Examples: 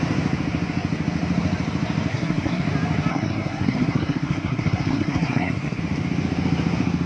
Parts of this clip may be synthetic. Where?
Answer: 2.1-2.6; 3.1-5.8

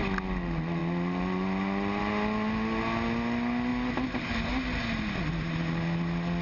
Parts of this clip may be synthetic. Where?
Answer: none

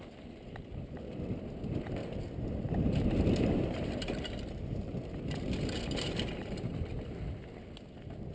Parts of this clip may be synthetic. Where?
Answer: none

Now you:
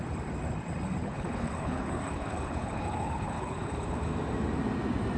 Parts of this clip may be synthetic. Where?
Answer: 1.0-4.1